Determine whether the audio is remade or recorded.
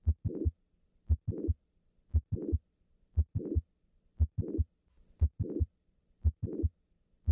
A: remade